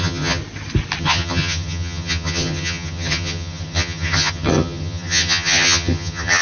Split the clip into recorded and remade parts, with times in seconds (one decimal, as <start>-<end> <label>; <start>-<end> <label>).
0.0-0.4 remade; 0.4-1.0 recorded; 1.0-6.4 remade